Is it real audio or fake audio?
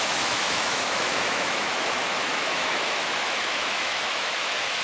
fake